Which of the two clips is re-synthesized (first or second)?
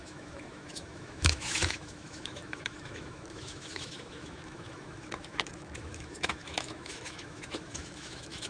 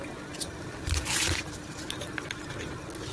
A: first